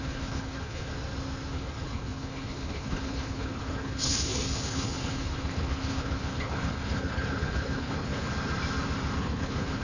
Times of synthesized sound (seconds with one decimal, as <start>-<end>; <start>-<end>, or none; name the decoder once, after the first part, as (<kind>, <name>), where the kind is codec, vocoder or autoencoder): 0.0-0.9 (codec, HILCodec); 1.5-8.3; 9.2-9.8